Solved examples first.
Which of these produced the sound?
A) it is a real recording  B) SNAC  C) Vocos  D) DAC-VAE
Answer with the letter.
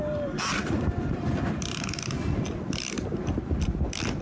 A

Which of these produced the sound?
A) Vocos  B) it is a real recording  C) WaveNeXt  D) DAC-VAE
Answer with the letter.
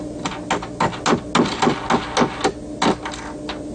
B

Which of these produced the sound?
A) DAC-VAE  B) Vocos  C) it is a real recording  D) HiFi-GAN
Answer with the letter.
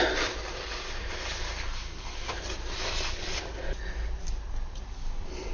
C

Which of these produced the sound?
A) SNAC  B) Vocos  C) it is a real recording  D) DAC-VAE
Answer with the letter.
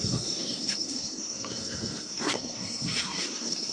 A